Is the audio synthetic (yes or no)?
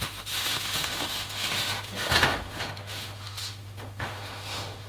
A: yes